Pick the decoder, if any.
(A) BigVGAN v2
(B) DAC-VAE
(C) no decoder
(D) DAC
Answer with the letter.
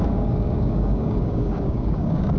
D